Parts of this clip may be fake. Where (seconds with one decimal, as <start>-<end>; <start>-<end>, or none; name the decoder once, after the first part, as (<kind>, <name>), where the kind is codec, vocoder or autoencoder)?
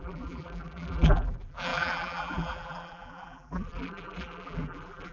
0.0-5.1 (vocoder, BigVGAN v2)